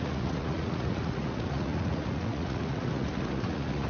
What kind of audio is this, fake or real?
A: fake